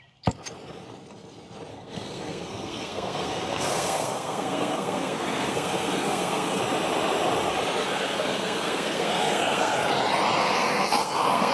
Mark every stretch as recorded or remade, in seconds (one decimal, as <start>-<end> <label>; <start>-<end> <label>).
0.0-1.7 recorded; 1.7-6.6 remade; 6.6-7.8 recorded; 7.8-9.9 remade; 9.9-10.4 recorded; 10.4-11.5 remade